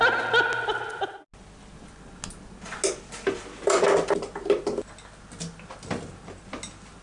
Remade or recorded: recorded